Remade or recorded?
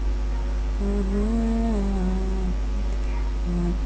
recorded